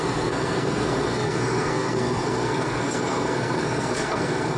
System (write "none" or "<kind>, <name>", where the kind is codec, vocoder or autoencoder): codec, SNAC